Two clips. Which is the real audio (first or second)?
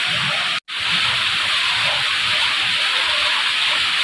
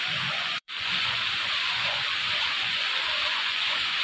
first